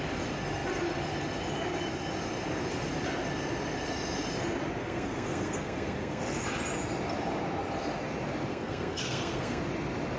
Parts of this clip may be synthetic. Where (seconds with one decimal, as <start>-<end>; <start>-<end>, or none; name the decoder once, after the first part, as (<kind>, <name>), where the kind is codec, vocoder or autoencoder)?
4.8-6.2 (codec, SNAC); 8.5-9.6